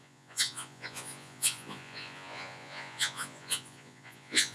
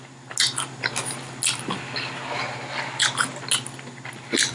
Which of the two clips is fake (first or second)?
first